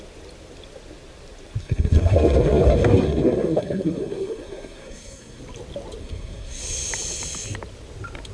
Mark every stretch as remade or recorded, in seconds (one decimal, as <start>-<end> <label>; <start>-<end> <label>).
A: 0.0-1.6 recorded; 1.6-5.4 remade; 5.4-6.0 recorded; 6.0-6.6 remade; 6.6-8.3 recorded